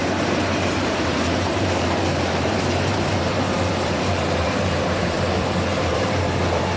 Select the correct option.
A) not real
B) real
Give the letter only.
A